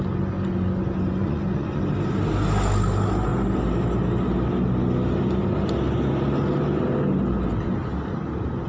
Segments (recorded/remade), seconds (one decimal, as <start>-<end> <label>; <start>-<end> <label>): 0.0-1.2 recorded; 1.2-1.8 remade; 1.8-8.7 recorded